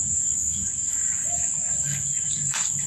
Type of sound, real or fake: fake